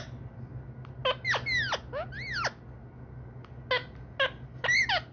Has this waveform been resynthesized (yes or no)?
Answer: no